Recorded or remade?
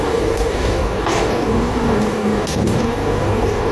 remade